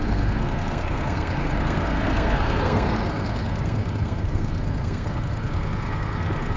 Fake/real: fake